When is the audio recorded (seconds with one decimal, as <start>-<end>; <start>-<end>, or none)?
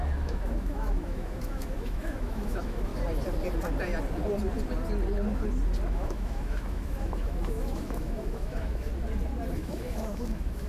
2.9-5.9; 8.9-9.5